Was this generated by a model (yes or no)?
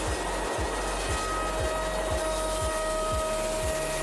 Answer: no